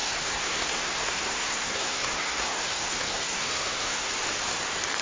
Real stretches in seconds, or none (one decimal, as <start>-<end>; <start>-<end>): 4.1-5.0